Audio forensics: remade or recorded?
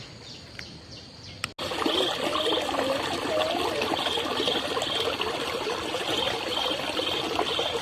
recorded